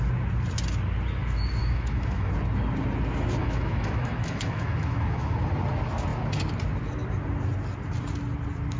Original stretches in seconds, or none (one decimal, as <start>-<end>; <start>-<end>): 0.0-1.6; 2.3-3.4; 5.4-8.8